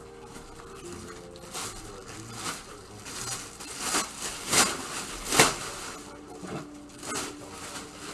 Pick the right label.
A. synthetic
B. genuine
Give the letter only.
B